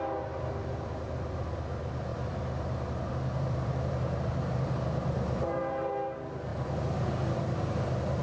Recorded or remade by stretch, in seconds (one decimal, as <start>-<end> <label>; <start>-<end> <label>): 0.0-2.1 recorded; 2.1-5.9 remade; 5.9-6.5 recorded; 6.5-7.4 remade; 7.4-8.2 recorded